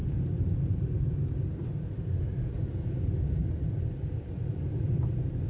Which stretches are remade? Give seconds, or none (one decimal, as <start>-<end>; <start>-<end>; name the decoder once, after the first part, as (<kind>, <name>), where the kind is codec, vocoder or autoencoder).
3.4-5.0 (vocoder, BigVGAN v2)